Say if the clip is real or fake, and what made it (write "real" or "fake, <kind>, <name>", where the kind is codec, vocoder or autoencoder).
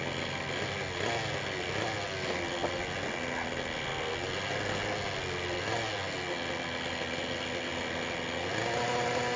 real